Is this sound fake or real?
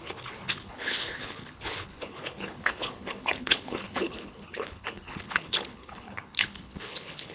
fake